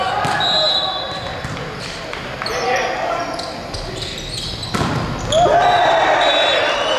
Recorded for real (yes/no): yes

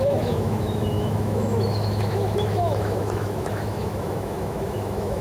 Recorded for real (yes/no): no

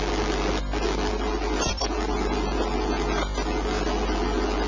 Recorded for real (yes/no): yes